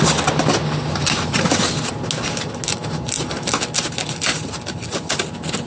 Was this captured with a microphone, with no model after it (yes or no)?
yes